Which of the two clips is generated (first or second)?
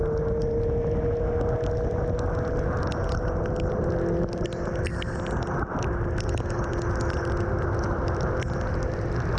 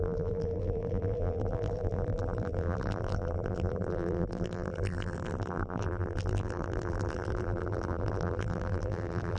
second